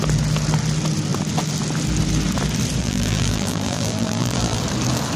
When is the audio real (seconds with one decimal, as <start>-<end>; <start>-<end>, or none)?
0.0-2.8; 4.6-5.2